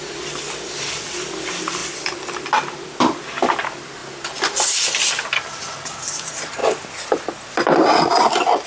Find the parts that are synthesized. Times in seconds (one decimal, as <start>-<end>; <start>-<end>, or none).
1.8-2.8